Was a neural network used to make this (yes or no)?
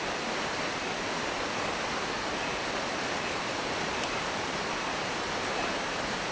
no